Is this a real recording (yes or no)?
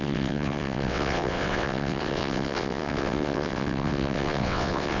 no